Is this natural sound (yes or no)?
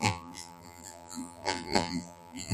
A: no